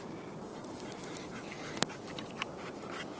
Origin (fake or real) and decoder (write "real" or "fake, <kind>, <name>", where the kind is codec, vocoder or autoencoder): real